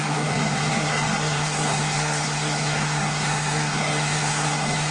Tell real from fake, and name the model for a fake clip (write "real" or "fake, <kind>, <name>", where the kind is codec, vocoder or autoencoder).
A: fake, codec, SNAC